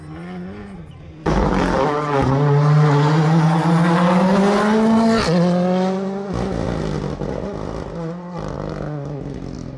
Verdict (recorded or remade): recorded